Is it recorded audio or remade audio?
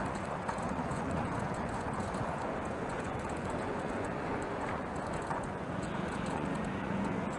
remade